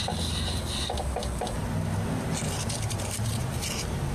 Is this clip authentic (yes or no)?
yes